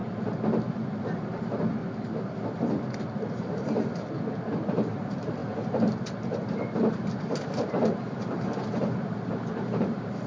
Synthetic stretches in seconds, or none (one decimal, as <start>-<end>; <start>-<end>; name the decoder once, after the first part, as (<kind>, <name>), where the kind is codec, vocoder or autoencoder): 1.0-1.8 (vocoder, BigVGAN v2); 4.5-5.4; 6.9-10.3